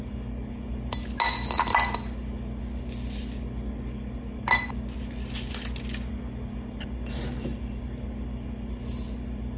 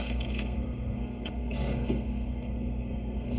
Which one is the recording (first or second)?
first